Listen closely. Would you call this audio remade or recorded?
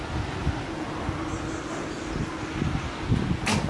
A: recorded